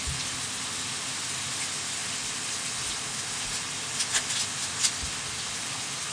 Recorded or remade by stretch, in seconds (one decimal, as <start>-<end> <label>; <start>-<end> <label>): 0.0-6.1 recorded